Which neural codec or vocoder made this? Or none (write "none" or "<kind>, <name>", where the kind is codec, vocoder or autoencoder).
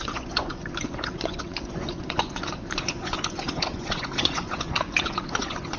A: vocoder, Vocos